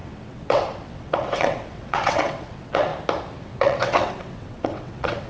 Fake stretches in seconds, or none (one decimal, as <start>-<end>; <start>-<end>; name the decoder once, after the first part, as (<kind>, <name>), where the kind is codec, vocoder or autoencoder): 0.0-2.9 (vocoder, WaveNeXt); 3.4-5.3